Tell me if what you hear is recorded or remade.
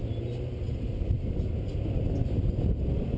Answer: recorded